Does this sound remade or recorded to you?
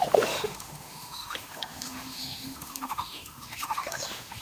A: remade